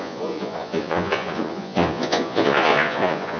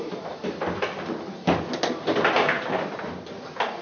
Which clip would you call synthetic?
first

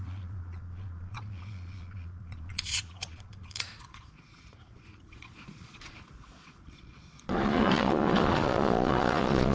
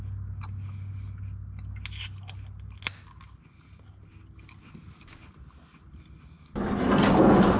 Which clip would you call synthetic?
first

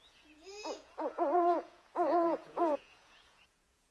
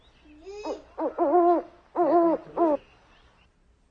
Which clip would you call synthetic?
first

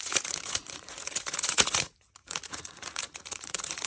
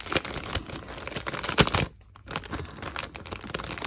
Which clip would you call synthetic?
first